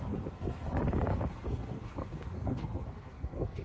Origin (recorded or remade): remade